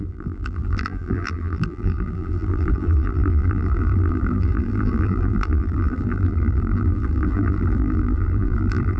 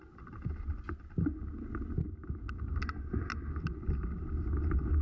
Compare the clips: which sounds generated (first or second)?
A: first